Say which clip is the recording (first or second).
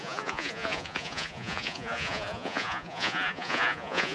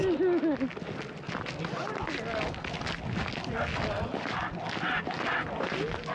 second